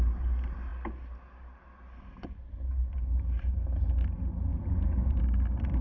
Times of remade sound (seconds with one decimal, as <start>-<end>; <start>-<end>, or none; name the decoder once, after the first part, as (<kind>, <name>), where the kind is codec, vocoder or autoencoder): 4.5-5.2 (vocoder, Vocos)